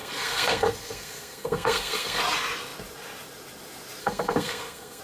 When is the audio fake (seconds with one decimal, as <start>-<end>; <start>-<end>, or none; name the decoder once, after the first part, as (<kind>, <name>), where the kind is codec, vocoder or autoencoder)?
0.0-2.2 (codec, SNAC); 4.0-5.0

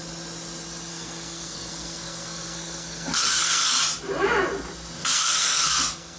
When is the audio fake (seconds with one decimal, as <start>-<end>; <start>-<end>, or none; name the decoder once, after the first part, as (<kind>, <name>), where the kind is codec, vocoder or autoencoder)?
0.9-3.8 (codec, SNAC); 5.0-6.2

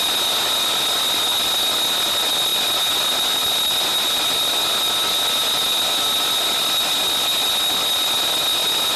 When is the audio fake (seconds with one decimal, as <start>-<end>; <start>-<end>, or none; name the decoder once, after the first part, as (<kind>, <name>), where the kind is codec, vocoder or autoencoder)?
none